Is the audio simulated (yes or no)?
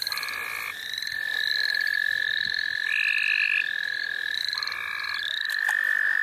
no